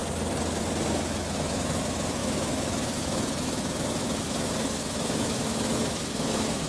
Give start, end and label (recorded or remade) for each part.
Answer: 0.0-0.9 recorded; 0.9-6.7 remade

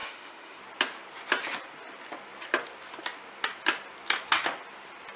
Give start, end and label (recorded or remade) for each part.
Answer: 0.0-0.6 remade; 0.6-5.2 recorded

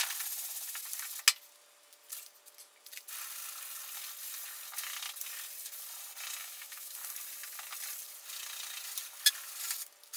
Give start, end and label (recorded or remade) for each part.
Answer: 0.0-6.4 recorded; 6.4-6.9 remade; 6.9-10.2 recorded

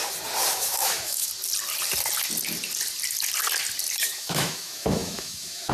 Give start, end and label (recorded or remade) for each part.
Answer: 0.0-0.5 recorded; 0.5-1.3 remade; 1.3-4.0 recorded; 4.0-5.7 remade

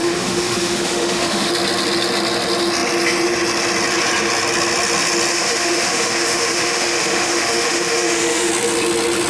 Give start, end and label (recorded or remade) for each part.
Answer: 0.0-1.5 remade; 1.5-5.3 recorded; 5.3-8.5 remade; 8.5-9.3 recorded

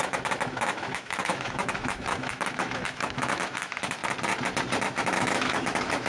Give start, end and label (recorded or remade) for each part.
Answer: 0.0-4.0 remade; 4.0-4.8 recorded; 4.8-6.1 remade